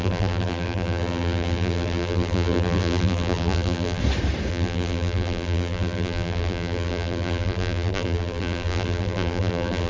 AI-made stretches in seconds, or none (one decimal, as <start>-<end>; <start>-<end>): 0.0-4.0; 4.5-9.9